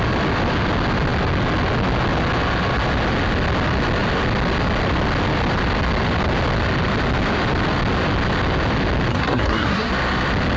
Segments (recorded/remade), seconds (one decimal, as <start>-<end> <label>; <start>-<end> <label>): 0.0-9.1 recorded; 9.1-9.9 remade; 9.9-10.6 recorded